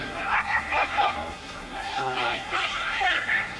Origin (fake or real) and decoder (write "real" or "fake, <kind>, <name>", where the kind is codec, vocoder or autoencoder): fake, codec, SNAC